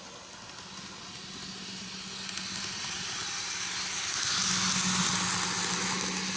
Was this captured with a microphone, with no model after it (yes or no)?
yes